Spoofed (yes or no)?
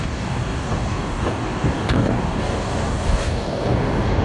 yes